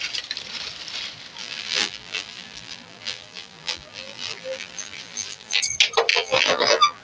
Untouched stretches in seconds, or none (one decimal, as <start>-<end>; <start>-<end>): 0.0-1.4; 5.6-6.1